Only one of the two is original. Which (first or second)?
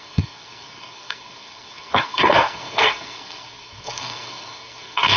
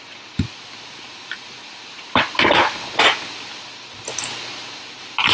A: second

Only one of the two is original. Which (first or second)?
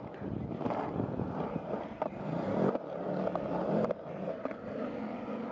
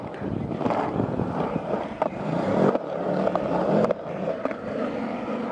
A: first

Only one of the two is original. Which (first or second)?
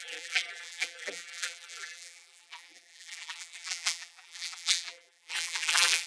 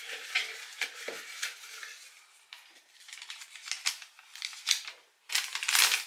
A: second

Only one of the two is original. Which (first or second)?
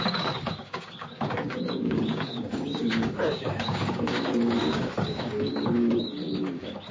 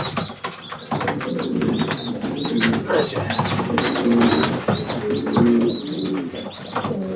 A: second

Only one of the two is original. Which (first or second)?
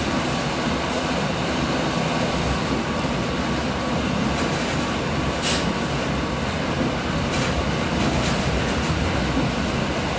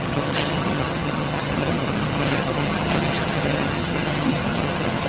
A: first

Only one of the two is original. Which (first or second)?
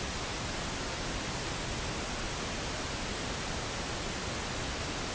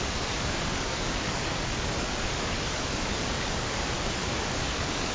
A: first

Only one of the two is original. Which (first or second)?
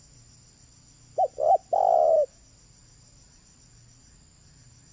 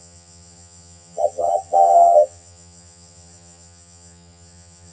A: first